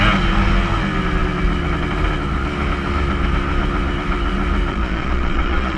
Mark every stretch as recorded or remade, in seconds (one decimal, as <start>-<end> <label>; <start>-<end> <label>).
0.0-4.7 recorded; 4.7-5.8 remade

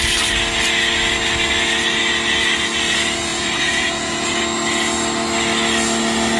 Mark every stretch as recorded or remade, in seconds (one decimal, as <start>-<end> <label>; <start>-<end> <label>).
0.0-3.3 recorded; 3.3-4.4 remade; 4.4-6.4 recorded